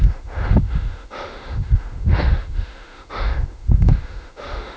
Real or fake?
fake